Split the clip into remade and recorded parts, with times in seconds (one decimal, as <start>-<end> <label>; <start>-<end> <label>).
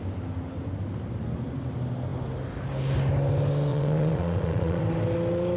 0.0-3.7 recorded; 3.7-4.8 remade; 4.8-5.6 recorded